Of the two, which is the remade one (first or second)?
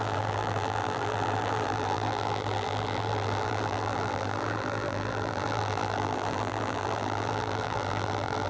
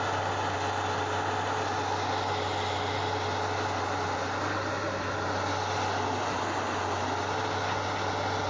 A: first